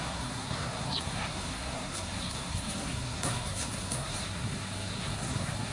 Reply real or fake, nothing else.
fake